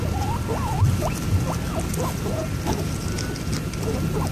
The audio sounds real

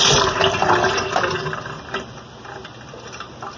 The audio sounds real